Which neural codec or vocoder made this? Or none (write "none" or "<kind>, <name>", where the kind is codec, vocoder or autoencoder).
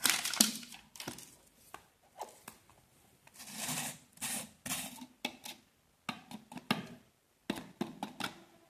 none